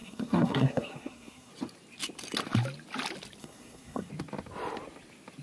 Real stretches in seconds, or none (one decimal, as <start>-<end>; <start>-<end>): 1.5-3.4; 4.1-5.4